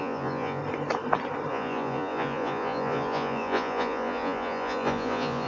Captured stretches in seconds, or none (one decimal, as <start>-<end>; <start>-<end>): 0.6-1.5